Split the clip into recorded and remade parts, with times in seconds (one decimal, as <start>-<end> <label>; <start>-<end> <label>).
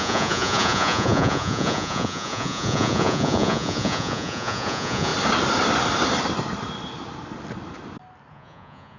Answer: 0.0-5.1 remade; 5.1-8.3 recorded; 8.3-9.0 remade